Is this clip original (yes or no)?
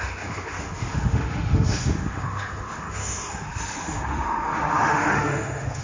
no